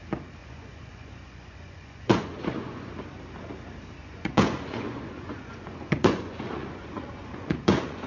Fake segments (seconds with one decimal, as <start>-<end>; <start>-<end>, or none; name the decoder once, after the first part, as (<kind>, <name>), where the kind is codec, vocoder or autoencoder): 0.4-2.9 (vocoder, Vocos); 4.0-8.1

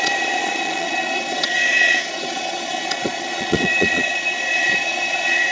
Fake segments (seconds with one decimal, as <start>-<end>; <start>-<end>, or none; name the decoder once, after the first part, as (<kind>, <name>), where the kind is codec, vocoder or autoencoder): 0.0-5.5 (vocoder, Vocos)

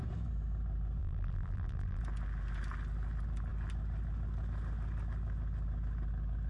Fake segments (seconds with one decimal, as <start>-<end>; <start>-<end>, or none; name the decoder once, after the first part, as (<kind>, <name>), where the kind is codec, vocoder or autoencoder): 1.0-2.0 (vocoder, BigVGAN v2)

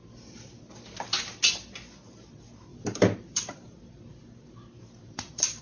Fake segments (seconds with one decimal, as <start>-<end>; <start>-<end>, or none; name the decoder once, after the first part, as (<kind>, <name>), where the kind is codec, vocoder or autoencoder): 2.7-5.6 (vocoder, BigVGAN v2)

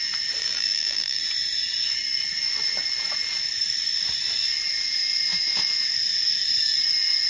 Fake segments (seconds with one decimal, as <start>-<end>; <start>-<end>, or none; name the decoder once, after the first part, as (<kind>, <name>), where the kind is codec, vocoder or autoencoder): 0.4-1.2 (vocoder, BigVGAN v2)

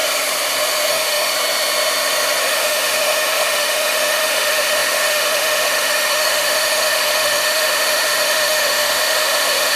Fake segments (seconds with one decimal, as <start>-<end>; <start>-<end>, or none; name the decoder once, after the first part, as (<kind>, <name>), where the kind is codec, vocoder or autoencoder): 0.9-1.3 (autoencoder, DAC-VAE); 2.4-9.8